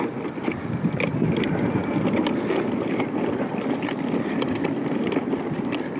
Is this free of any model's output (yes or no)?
yes